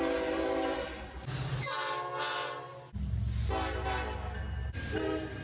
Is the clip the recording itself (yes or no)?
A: yes